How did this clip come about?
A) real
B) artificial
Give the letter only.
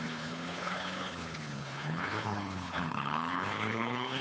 B